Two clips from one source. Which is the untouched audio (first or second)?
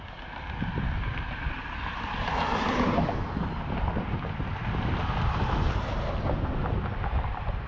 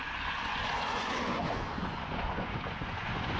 first